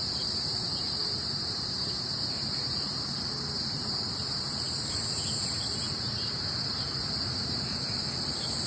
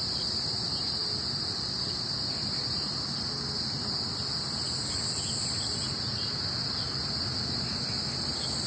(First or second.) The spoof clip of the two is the first